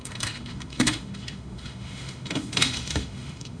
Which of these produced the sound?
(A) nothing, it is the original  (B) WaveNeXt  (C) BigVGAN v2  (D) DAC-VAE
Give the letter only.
D